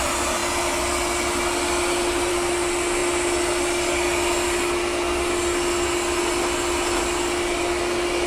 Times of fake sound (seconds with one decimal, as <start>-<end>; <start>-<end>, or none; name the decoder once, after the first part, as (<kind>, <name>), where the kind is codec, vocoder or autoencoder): none